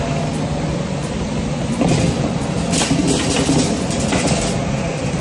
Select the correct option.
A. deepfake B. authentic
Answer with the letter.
B